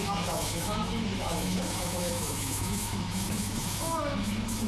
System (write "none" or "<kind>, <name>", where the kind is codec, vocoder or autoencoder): autoencoder, DAC-VAE